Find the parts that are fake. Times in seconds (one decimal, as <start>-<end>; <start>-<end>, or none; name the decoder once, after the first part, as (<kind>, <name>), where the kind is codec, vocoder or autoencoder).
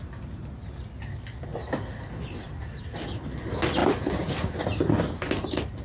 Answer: 1.5-2.9 (vocoder, BigVGAN v2)